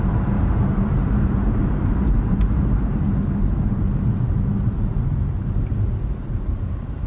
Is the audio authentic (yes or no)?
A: no